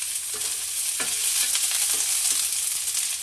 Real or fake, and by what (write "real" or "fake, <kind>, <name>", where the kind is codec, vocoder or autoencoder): real